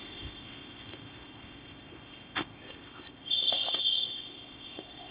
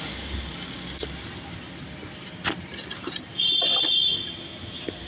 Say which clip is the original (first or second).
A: second